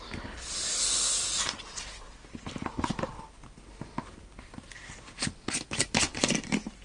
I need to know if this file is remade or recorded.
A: recorded